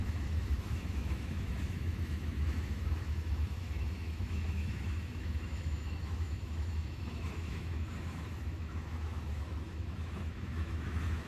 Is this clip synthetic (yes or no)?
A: yes